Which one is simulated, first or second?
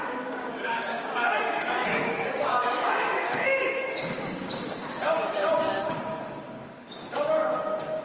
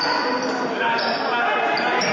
first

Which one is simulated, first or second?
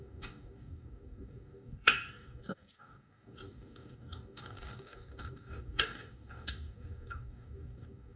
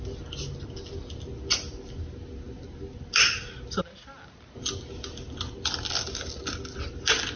first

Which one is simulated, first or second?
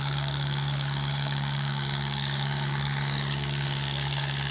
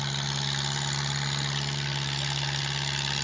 first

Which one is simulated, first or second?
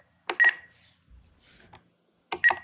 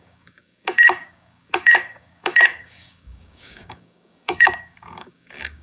second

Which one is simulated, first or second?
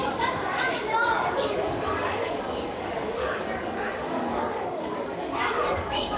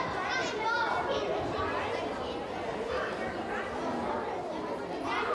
first